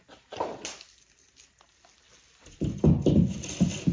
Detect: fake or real real